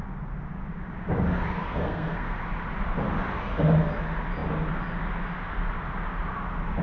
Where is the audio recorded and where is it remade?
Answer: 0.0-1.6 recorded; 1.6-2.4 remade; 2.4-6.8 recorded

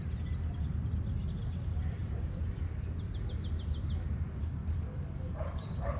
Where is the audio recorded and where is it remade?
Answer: 0.0-4.4 recorded; 4.4-6.0 remade

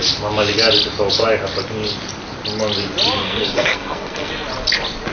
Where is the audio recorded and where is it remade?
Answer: 0.0-3.2 recorded; 3.2-4.3 remade; 4.3-5.1 recorded

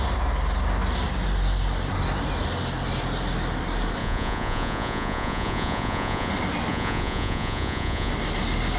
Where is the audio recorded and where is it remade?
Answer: 0.0-4.0 recorded; 4.0-6.3 remade; 6.3-6.7 recorded; 6.7-8.1 remade; 8.1-8.8 recorded

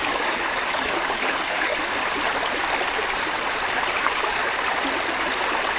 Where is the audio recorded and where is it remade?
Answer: 0.0-1.7 remade; 1.7-4.0 recorded; 4.0-4.4 remade; 4.4-5.8 recorded